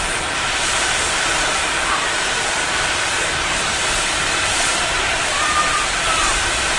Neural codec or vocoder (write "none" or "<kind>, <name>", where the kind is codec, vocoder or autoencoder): vocoder, BigVGAN v2